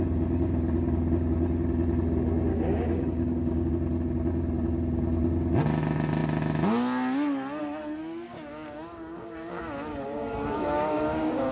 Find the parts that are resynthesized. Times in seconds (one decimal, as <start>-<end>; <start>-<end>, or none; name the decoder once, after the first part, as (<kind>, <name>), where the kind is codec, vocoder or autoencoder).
2.5-3.7 (codec, DAC); 8.0-11.5